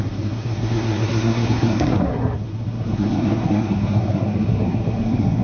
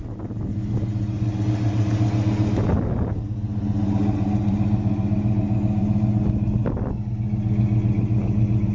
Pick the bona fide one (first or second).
second